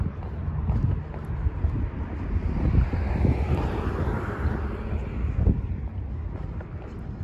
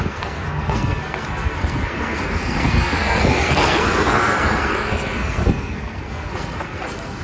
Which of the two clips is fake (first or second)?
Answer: second